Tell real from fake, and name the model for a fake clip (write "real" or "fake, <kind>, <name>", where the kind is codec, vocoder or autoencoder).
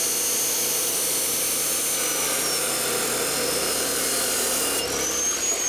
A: real